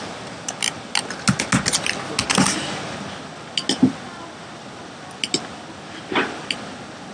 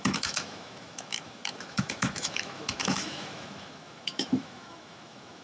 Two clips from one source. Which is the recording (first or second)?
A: first